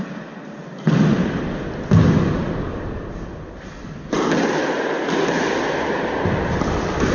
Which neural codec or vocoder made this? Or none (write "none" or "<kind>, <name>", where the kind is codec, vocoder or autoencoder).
none